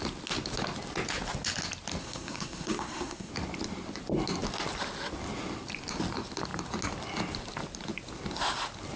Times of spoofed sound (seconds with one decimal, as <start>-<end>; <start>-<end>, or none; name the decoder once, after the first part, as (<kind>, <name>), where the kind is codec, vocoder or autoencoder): 2.0-3.3 (codec, SNAC)